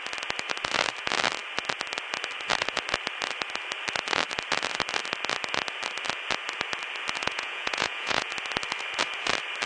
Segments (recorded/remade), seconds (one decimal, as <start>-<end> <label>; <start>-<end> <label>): 0.0-7.2 recorded; 7.2-8.3 remade; 8.3-9.7 recorded